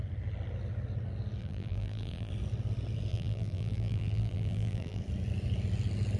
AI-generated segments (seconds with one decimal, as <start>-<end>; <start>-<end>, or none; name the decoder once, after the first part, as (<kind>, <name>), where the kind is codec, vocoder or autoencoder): 1.4-2.3 (vocoder, BigVGAN v2); 3.1-5.0